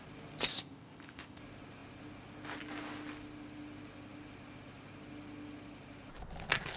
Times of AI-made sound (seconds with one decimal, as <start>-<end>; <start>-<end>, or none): 0.5-1.4